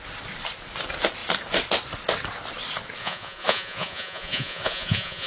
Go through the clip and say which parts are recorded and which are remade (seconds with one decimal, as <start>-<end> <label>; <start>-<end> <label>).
0.0-3.0 recorded; 3.0-5.3 remade